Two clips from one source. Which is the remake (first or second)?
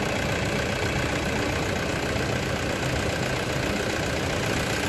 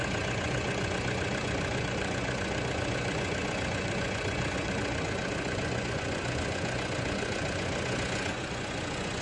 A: second